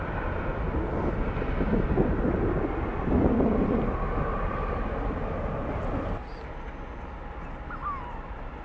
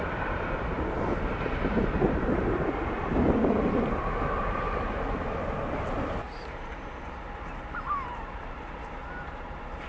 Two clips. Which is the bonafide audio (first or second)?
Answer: first